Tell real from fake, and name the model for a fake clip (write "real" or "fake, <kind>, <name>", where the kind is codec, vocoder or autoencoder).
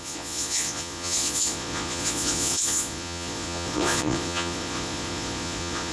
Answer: fake, vocoder, Vocos